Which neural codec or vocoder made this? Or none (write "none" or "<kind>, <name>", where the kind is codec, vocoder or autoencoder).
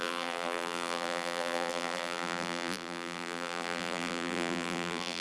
vocoder, BigVGAN v2